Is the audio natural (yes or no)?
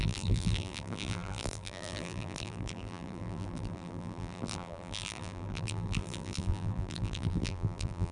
no